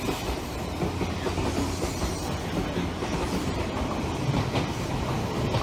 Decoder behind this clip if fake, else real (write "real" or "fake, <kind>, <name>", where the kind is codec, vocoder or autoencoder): real